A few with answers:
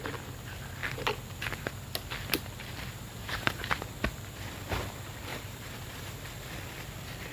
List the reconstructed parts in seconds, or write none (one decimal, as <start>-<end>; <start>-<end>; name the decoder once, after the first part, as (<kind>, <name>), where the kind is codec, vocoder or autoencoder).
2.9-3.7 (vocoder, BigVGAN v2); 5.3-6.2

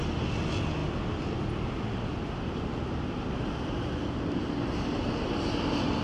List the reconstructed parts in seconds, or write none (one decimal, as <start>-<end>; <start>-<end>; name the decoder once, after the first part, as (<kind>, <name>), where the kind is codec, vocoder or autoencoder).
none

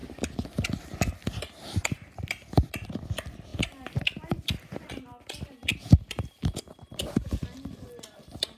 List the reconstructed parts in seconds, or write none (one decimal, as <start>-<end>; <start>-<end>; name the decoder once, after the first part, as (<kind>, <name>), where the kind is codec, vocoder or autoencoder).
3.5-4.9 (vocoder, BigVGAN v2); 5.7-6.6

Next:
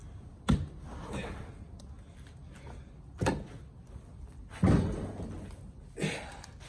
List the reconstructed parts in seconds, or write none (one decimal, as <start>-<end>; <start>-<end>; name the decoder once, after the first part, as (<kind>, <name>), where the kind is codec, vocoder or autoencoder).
none